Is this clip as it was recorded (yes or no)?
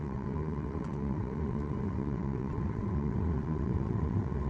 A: no